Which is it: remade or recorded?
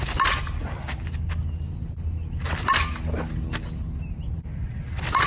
recorded